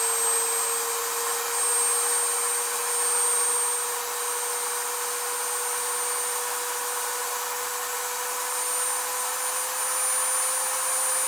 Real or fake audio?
real